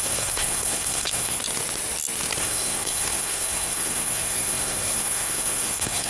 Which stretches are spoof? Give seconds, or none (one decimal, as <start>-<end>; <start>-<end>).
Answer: 0.0-1.4; 2.4-6.1